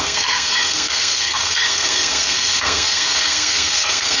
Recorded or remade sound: remade